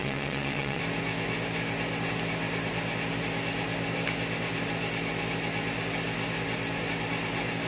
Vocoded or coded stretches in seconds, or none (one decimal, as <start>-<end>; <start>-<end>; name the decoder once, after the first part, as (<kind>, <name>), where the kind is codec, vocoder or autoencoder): 0.0-0.8 (vocoder, WaveNeXt)